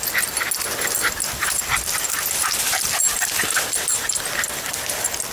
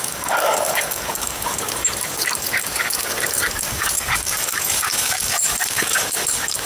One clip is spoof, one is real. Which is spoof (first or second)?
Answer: second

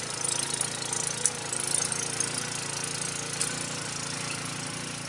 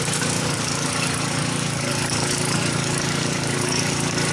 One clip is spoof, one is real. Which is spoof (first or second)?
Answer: second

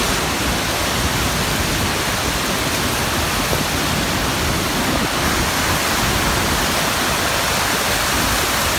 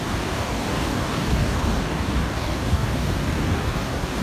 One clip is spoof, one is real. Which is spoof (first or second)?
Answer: second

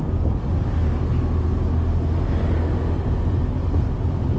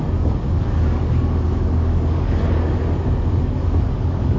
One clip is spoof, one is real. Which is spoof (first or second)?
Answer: second